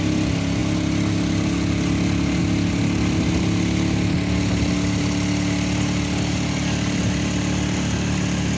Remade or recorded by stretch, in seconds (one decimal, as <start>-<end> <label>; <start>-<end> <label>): 0.0-8.6 recorded